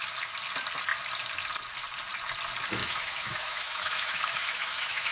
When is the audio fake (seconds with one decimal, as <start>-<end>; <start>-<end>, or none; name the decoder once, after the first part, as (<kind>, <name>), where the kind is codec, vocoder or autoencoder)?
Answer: 2.8-5.1 (autoencoder, DAC-VAE)